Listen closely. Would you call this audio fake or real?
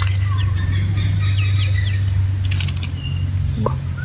real